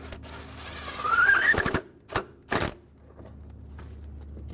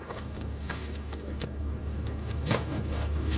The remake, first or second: second